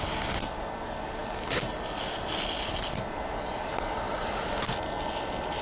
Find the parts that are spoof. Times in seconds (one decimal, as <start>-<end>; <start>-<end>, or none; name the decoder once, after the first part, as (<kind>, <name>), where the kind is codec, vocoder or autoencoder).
none